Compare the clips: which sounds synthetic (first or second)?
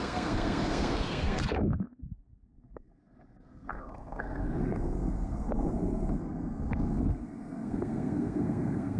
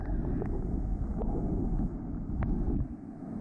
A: first